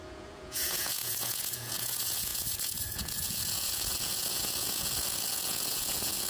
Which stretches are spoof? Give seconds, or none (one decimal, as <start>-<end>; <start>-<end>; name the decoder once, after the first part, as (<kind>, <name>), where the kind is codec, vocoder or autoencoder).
0.0-6.3 (vocoder, Vocos)